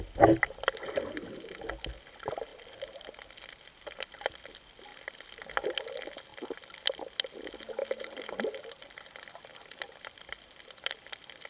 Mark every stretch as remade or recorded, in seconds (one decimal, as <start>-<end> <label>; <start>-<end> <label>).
0.0-7.8 recorded; 7.8-10.9 remade; 10.9-11.5 recorded